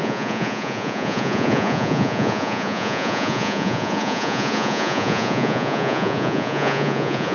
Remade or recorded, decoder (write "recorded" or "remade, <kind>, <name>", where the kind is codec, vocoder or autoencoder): remade, vocoder, Vocos